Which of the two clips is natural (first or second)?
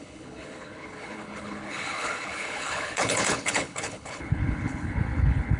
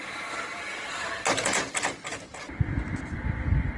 second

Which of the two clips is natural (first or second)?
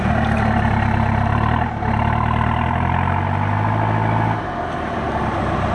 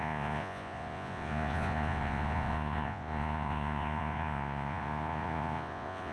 first